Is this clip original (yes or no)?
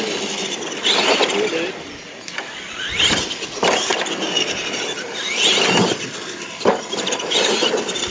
yes